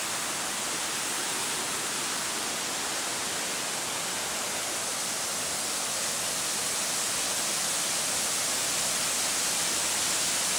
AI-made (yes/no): no